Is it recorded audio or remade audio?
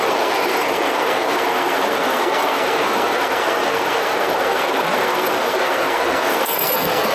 remade